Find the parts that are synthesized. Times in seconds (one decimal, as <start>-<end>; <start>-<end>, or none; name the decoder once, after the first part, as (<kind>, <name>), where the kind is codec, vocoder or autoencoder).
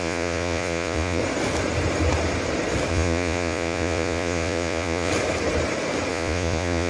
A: 0.0-1.2 (vocoder, Vocos); 2.9-5.1; 6.1-6.9